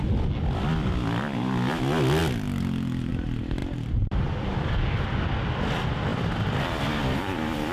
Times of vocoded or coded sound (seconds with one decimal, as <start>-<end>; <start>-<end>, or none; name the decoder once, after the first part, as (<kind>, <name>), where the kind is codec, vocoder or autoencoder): 3.6-5.0 (vocoder, BigVGAN v2); 6.1-6.6